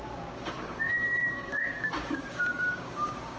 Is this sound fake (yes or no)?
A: yes